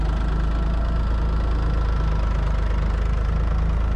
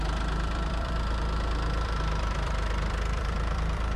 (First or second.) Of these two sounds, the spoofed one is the second